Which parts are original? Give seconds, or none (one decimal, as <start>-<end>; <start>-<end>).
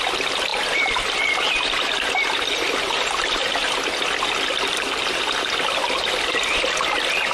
none